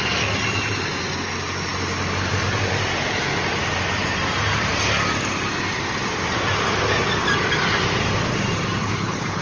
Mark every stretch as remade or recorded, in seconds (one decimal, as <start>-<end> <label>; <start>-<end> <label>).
0.0-8.8 recorded; 8.8-9.4 remade